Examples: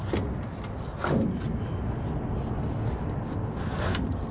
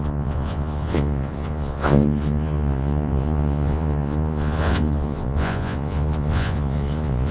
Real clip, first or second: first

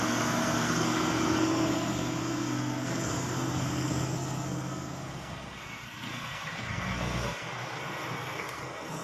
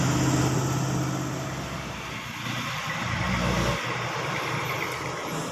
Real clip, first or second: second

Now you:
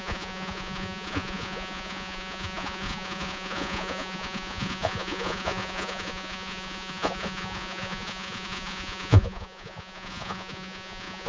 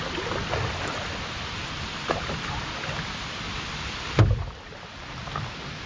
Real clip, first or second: second